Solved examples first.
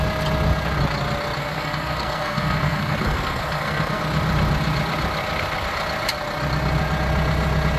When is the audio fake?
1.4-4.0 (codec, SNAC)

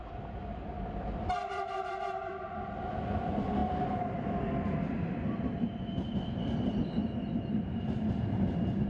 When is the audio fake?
0.0-8.9 (vocoder, BigVGAN v2)

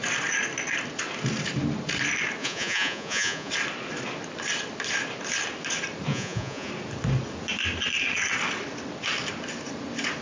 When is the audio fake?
2.4-3.5 (vocoder, Vocos); 6.1-6.7

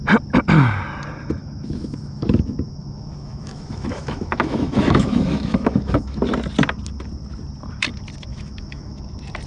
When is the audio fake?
1.4-6.2 (autoencoder, DAC-VAE); 8.3-9.1

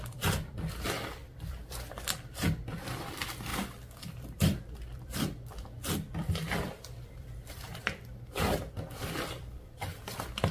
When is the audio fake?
0.0-3.5 (vocoder, BigVGAN v2); 4.0-7.7; 9.0-10.5

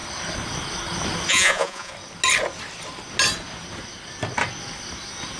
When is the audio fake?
1.3-1.9 (vocoder, Vocos)